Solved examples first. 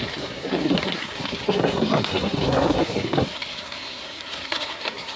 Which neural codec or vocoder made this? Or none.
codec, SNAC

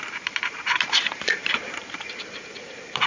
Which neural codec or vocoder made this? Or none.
vocoder, BigVGAN v2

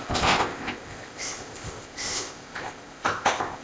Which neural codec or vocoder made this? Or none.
codec, ZipCodec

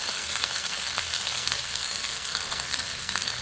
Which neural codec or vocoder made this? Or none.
codec, SNAC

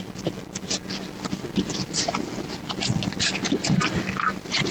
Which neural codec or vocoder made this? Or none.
none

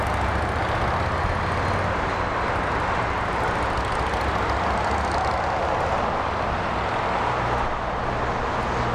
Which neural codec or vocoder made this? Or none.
none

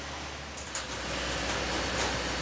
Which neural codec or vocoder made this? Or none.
none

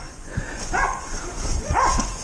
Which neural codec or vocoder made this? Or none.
vocoder, Vocos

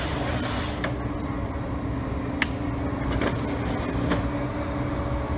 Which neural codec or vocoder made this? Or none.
none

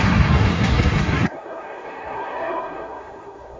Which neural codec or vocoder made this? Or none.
codec, SNAC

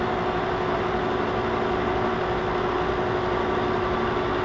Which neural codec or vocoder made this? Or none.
none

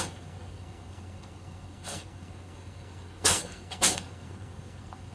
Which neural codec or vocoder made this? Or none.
codec, SNAC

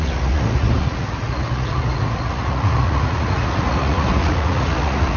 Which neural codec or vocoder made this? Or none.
vocoder, Vocos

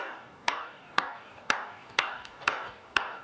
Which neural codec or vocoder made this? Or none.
codec, DAC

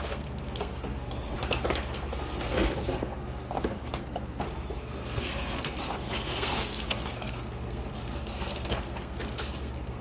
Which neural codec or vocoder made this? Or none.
codec, SNAC